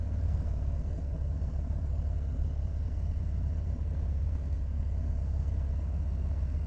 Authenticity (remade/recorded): remade